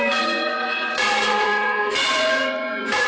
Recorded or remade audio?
remade